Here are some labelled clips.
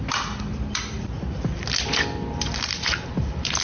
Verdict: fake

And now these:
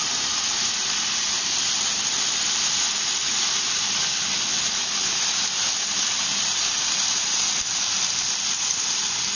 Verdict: real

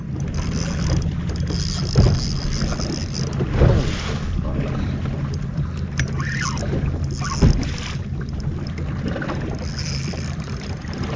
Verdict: real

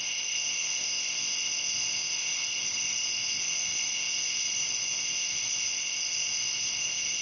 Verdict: fake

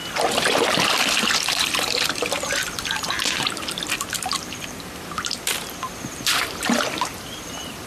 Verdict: fake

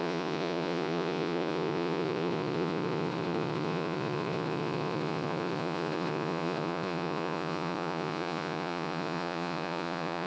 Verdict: fake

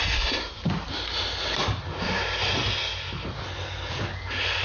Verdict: real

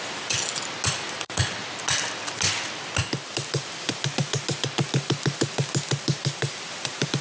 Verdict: real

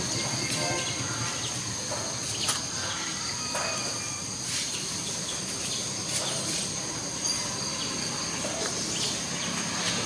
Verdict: real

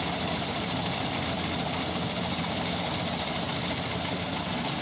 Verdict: real